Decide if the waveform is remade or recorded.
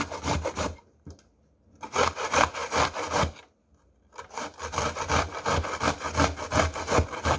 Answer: recorded